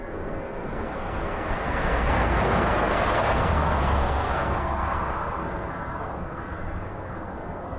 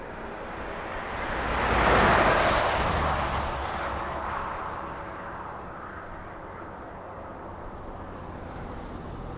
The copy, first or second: first